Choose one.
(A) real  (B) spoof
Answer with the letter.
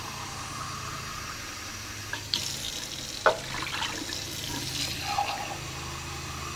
A